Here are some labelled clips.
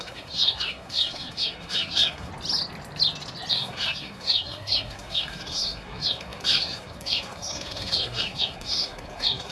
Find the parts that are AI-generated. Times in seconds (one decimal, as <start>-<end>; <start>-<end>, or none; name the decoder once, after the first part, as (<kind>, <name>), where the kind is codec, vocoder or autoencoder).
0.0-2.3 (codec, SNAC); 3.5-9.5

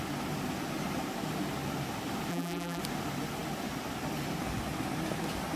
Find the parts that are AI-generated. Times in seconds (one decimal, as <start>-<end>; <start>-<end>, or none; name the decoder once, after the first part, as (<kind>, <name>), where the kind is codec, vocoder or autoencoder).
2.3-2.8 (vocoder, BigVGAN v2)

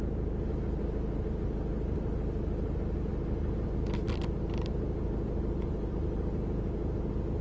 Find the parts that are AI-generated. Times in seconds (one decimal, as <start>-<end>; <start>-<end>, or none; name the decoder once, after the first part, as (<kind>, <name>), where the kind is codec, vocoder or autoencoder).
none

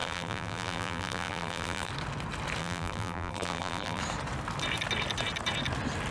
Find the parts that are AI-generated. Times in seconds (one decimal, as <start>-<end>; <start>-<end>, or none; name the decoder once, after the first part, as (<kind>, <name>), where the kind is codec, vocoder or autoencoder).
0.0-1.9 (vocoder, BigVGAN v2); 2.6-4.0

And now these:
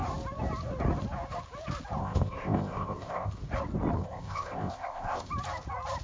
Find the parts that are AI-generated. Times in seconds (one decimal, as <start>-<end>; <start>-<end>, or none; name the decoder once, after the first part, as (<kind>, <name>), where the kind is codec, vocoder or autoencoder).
2.0-3.3 (codec, ZipCodec); 4.0-5.3